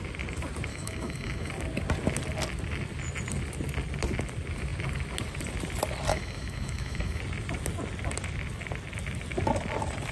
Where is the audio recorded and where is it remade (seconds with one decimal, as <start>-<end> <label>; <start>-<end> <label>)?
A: 0.0-0.7 recorded; 0.7-1.5 remade; 1.5-6.1 recorded; 6.1-7.2 remade; 7.2-10.1 recorded